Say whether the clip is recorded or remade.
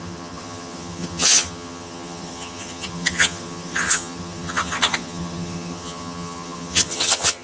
remade